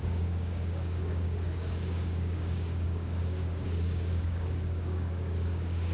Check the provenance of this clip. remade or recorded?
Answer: remade